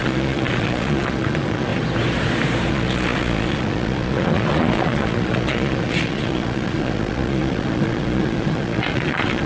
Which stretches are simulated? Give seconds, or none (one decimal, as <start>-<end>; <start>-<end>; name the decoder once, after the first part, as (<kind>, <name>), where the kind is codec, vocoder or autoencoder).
0.0-1.7 (vocoder, Vocos); 2.7-9.5